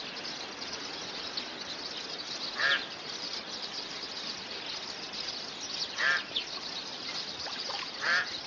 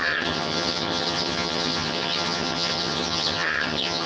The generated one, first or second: second